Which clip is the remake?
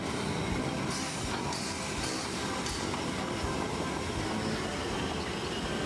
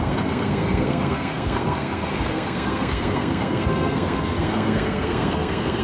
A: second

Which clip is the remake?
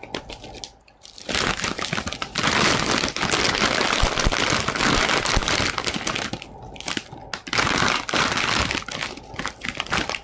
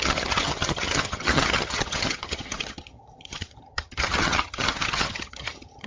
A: second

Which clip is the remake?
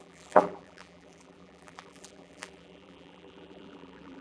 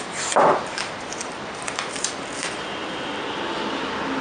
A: first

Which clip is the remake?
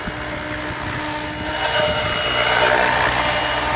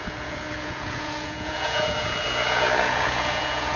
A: second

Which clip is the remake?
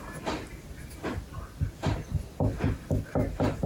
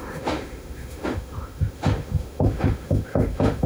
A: second